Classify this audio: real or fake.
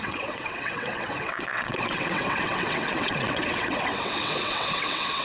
fake